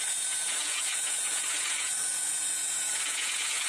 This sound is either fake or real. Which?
fake